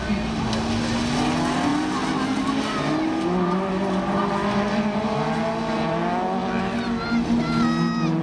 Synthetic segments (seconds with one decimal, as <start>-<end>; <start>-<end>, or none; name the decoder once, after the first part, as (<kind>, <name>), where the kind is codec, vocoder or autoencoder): none